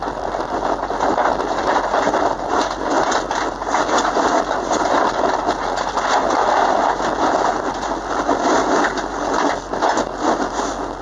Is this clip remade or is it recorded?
recorded